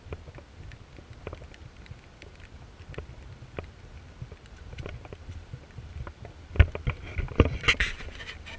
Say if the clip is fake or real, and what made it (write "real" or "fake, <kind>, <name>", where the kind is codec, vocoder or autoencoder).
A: real